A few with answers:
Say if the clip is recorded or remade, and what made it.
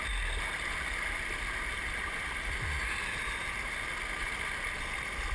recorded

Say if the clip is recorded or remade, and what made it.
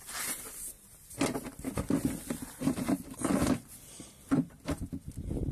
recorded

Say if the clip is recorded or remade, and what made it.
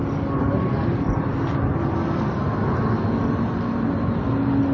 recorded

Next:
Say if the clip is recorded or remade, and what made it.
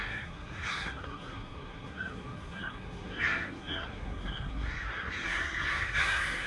remade, codec, SNAC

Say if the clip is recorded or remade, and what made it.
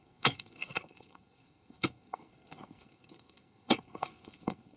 remade, codec, SNAC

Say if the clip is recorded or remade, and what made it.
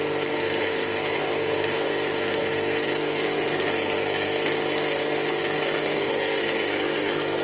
remade, codec, SNAC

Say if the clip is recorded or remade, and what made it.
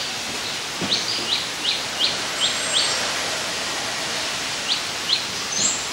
recorded